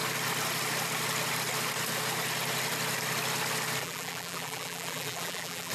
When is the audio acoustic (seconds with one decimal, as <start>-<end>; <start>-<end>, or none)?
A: 0.0-3.8